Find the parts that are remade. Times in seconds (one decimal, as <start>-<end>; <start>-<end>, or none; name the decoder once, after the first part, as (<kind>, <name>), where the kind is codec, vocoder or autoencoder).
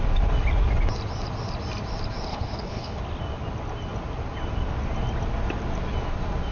2.3-3.0 (codec, HILCodec)